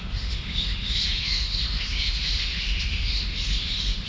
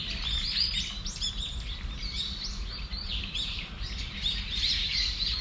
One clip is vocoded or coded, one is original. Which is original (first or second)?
second